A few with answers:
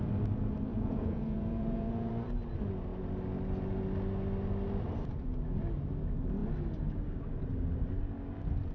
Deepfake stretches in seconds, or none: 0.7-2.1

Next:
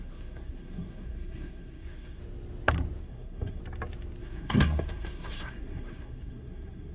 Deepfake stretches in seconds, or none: 0.0-2.2; 3.0-3.6; 4.2-6.9

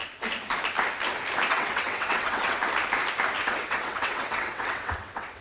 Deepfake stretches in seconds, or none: 1.5-2.6; 3.4-5.4

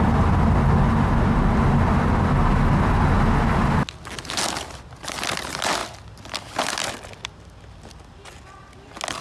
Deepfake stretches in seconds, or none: none

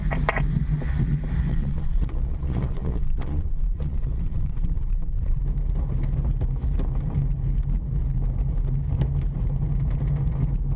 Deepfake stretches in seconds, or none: 1.5-5.4

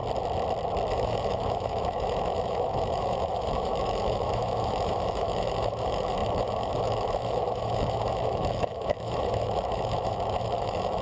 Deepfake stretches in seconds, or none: 0.9-11.0

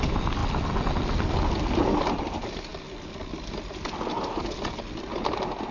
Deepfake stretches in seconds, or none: none

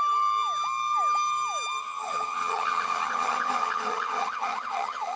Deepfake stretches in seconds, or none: 1.8-5.2